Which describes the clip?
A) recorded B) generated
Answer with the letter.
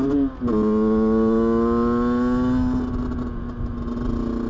A